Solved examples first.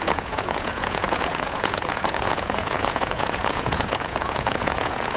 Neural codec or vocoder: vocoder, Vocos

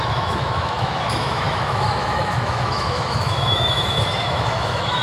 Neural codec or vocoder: autoencoder, DAC-VAE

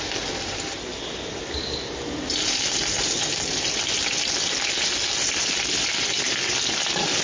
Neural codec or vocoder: none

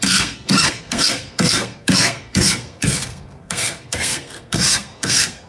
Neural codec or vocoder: codec, SNAC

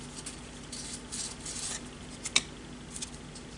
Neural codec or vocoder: none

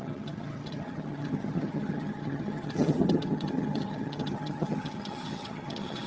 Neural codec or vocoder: vocoder, HiFi-GAN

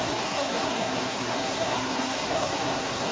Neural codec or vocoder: codec, SNAC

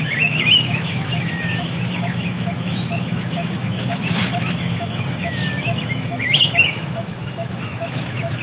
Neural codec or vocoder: autoencoder, DAC-VAE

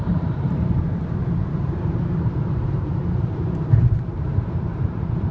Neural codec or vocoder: vocoder, BigVGAN v2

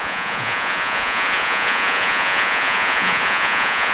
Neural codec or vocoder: vocoder, Vocos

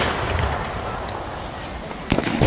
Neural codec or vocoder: none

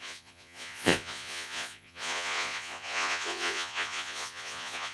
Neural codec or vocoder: vocoder, Vocos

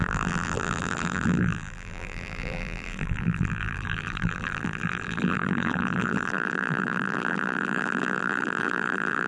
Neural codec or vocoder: vocoder, BigVGAN v2